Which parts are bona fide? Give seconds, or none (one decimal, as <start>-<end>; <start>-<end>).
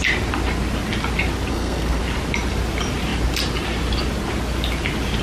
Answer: 0.0-1.5; 2.0-5.2